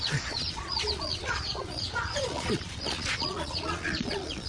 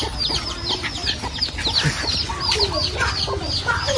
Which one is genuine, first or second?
second